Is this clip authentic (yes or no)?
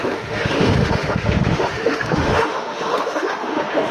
no